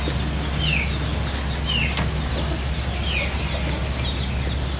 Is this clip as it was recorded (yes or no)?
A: yes